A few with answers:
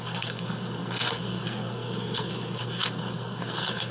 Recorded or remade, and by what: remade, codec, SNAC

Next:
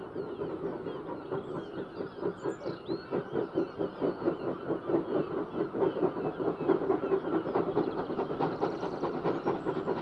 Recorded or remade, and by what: recorded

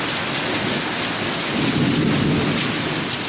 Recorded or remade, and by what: recorded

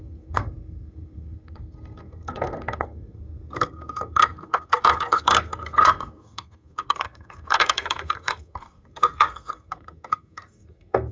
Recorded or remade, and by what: remade, codec, SNAC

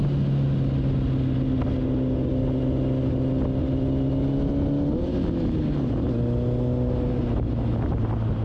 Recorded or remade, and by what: recorded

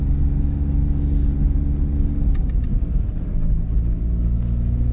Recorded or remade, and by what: recorded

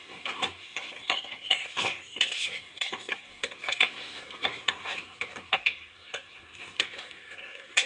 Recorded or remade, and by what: remade, codec, SNAC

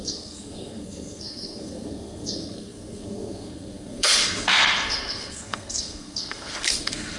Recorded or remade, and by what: remade, codec, SNAC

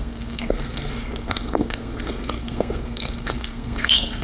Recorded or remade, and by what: remade, codec, SNAC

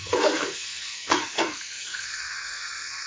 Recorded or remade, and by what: remade, codec, SNAC